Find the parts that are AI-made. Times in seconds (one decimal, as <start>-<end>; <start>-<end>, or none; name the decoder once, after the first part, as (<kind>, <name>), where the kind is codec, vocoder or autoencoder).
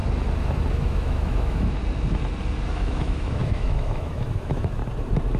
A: 0.7-1.8 (autoencoder, DAC-VAE); 2.7-4.8